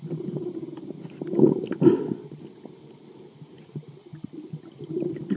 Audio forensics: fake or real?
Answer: real